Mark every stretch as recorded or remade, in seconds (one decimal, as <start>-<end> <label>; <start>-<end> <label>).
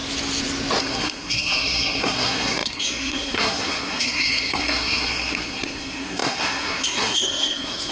0.0-0.8 recorded; 0.8-7.9 remade